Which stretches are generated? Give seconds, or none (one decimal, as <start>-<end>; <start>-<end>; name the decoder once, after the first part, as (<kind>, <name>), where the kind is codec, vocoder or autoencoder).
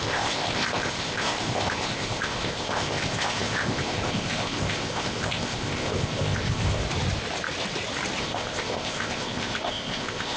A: 0.0-6.8 (codec, ZipCodec); 8.2-10.4